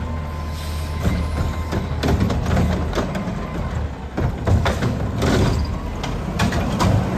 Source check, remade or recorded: recorded